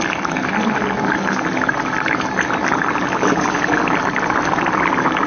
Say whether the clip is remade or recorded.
recorded